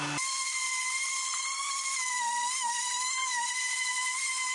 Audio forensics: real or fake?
fake